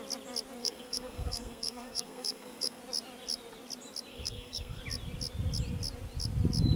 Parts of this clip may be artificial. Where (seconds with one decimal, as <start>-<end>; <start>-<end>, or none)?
0.6-2.8; 4.1-4.8